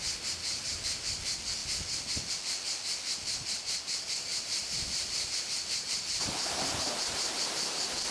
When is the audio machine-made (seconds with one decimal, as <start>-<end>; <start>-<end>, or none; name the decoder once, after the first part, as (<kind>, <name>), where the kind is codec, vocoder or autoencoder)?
4.3-8.1 (vocoder, BigVGAN v2)